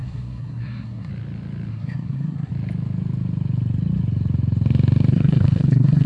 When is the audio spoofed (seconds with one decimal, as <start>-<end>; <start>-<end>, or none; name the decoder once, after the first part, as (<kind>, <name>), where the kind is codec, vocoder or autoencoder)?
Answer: 0.0-1.1 (codec, SNAC); 1.7-2.5; 5.1-6.1

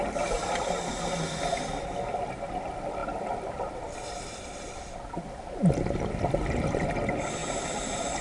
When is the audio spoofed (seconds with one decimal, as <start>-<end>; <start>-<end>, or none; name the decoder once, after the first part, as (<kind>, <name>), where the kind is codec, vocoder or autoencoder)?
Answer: none

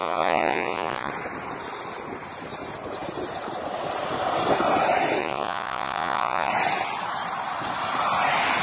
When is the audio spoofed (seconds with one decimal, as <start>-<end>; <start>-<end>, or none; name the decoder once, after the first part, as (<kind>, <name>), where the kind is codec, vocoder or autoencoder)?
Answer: 0.0-1.1 (vocoder, Vocos); 5.2-6.5

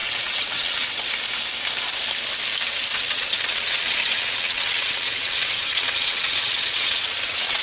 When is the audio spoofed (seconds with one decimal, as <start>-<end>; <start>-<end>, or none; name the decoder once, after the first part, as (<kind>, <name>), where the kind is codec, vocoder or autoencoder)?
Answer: 0.0-1.0 (vocoder, WaveNeXt); 2.9-7.6

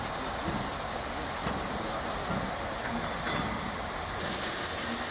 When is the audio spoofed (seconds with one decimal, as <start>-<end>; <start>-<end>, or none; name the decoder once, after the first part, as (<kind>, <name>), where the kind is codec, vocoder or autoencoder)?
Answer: none

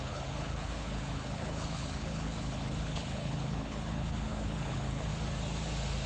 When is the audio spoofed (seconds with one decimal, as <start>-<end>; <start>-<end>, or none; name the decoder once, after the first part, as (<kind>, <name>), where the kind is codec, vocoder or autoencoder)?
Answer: 0.0-5.1 (codec, HILCodec)

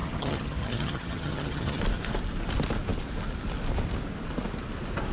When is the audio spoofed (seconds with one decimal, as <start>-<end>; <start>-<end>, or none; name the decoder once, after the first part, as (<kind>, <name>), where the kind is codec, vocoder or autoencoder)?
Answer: 0.0-1.8 (vocoder, HiFi-GAN)